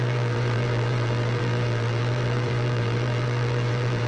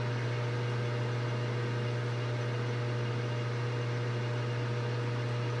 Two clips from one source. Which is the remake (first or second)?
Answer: first